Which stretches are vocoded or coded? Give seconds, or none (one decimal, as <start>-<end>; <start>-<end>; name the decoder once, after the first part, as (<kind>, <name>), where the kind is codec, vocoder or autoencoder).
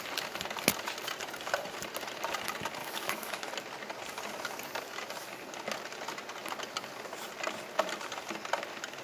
2.8-3.5 (codec, DAC)